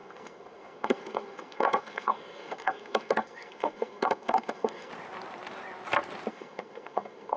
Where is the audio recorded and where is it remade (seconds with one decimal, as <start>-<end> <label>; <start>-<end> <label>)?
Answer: 0.0-4.9 remade; 4.9-6.3 recorded; 6.3-7.4 remade